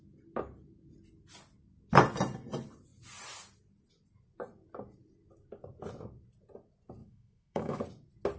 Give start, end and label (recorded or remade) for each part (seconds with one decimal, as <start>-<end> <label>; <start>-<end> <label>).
0.0-7.0 recorded; 7.0-7.8 remade; 7.8-8.4 recorded